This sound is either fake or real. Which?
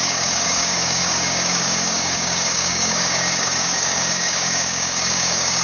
fake